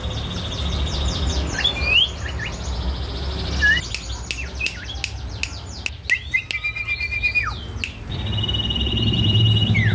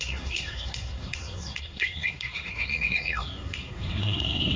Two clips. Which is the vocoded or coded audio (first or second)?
second